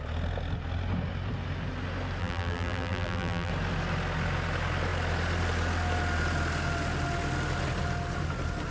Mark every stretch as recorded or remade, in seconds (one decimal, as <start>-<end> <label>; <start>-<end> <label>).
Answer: 0.0-2.2 recorded; 2.2-3.5 remade; 3.5-8.7 recorded